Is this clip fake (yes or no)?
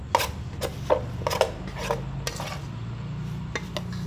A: no